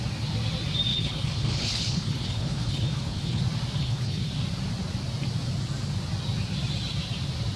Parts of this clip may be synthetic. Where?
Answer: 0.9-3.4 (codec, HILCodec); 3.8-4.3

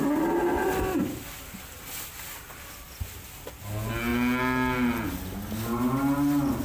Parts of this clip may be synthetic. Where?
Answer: none

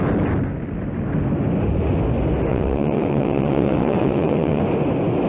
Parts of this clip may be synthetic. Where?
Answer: 2.5-4.6 (vocoder, WaveNeXt)

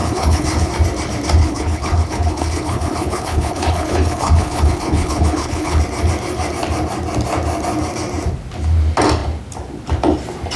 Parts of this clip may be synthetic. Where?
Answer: 0.0-0.7 (codec, HILCodec); 1.4-5.8

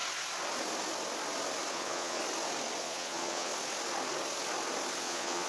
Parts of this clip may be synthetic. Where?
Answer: 1.7-2.2 (vocoder, Vocos); 2.8-3.5; 5.0-5.5

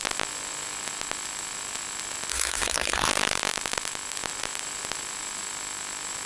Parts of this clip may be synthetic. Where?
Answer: 2.3-3.1 (codec, SNAC)